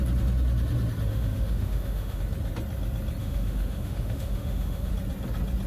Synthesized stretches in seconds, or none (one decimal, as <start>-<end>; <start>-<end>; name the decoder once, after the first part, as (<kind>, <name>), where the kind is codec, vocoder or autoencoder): 1.1-2.2 (autoencoder, DAC-VAE); 3.2-4.9